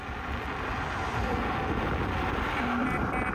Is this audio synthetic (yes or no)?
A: no